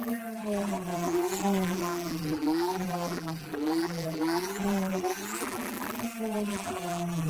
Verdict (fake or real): fake